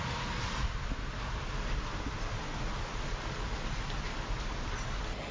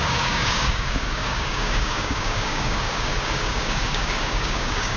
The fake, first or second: second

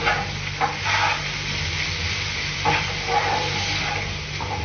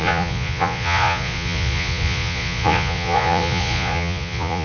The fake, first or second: second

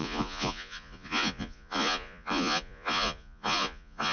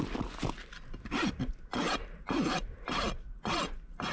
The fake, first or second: first